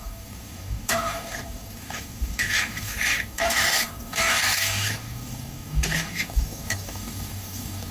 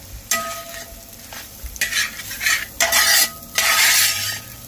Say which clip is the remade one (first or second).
first